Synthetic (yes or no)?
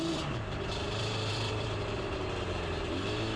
yes